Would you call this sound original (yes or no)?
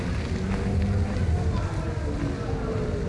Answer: yes